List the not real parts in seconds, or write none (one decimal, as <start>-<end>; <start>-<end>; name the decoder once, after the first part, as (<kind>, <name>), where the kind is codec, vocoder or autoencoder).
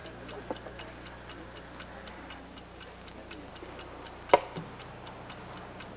none